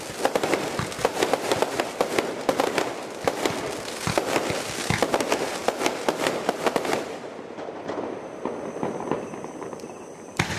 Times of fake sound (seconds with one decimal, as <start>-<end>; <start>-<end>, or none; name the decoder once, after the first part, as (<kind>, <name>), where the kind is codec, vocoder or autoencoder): none